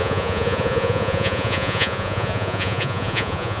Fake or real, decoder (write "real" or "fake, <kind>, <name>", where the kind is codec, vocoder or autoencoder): fake, vocoder, Vocos